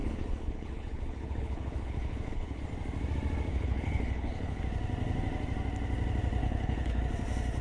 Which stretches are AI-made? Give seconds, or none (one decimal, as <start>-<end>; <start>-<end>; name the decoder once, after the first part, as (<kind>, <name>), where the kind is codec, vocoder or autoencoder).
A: 0.0-2.6 (codec, HILCodec); 3.5-4.6; 6.4-7.0